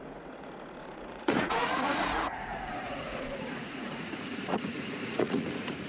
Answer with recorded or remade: remade